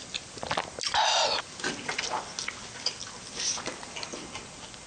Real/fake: real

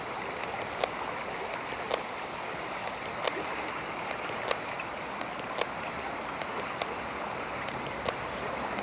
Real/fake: real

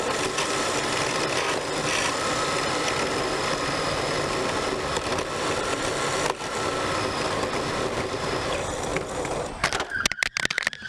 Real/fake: real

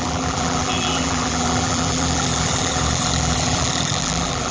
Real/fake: fake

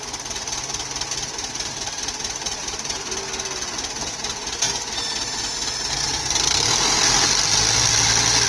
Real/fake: real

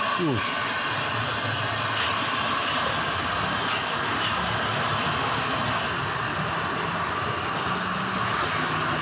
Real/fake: real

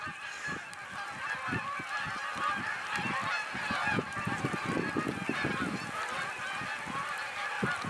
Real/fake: real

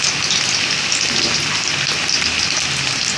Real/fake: real